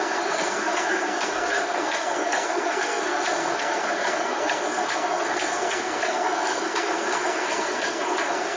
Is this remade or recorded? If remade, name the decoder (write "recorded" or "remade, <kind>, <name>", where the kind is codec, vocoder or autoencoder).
remade, codec, SNAC